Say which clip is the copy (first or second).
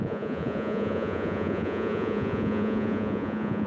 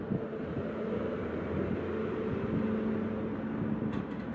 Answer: first